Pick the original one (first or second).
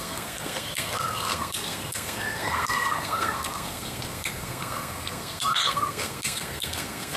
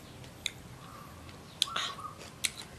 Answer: second